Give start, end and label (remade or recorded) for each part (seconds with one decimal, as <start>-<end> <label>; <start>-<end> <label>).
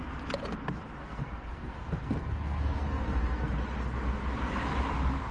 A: 0.0-1.0 recorded; 1.0-3.5 remade; 3.5-5.3 recorded